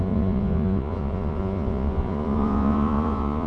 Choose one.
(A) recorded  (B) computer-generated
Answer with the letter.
B